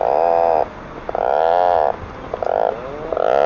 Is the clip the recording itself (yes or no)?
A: yes